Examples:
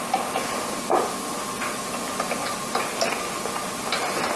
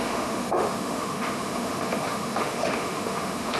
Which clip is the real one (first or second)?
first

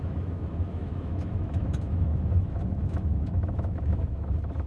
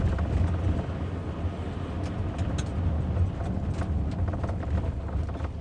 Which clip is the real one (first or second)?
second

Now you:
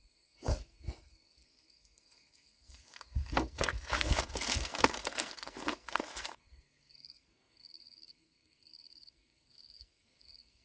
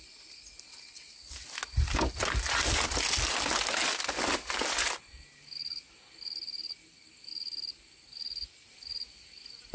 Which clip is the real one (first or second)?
second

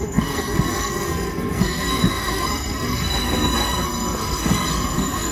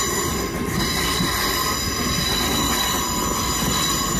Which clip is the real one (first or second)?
second